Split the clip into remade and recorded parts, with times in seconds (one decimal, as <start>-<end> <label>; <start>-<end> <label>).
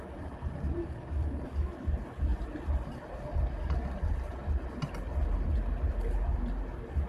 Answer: 0.0-0.8 recorded; 0.8-1.7 remade; 1.7-7.1 recorded